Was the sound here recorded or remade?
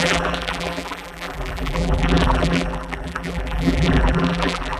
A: remade